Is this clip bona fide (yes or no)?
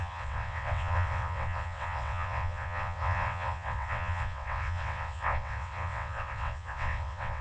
no